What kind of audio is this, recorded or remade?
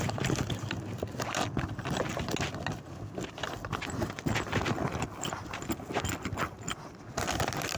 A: recorded